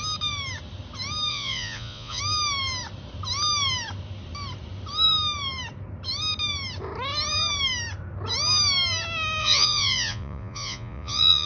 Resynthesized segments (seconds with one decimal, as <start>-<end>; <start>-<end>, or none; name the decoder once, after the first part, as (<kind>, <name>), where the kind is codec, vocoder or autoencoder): 1.3-2.2 (vocoder, Vocos); 9.4-11.5